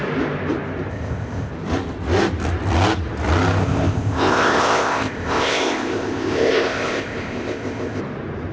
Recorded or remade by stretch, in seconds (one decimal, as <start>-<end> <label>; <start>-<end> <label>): 0.0-0.9 recorded; 0.9-1.5 remade; 1.5-3.6 recorded; 3.6-8.0 remade; 8.0-8.5 recorded